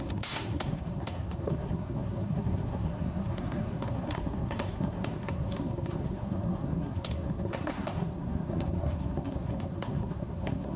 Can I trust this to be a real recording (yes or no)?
no